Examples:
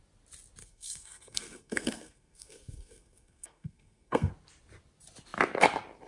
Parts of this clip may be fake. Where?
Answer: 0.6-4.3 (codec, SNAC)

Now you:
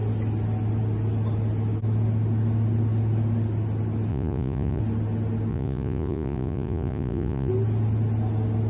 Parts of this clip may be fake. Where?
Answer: 4.1-4.8 (vocoder, Vocos); 5.5-7.5

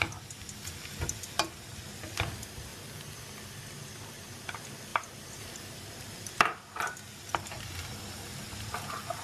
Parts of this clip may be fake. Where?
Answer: 2.7-3.9 (vocoder, BigVGAN v2); 4.9-6.8

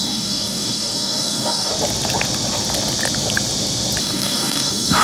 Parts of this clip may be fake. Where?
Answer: 0.0-1.7 (codec, DAC); 4.0-5.0

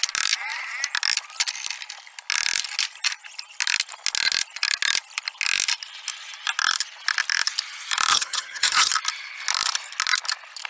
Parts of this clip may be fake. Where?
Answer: 8.1-8.9 (vocoder, HiFi-GAN)

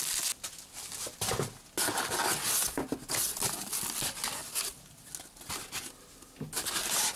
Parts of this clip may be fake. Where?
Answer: 4.4-5.1 (vocoder, BigVGAN v2)

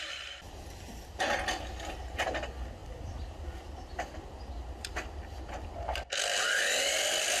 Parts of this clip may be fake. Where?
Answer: none

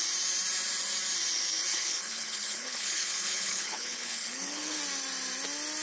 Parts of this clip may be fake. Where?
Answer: 1.7-4.8 (codec, HILCodec)